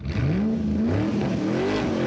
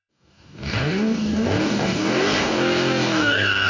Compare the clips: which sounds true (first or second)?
first